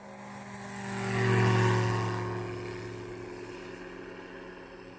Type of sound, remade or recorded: recorded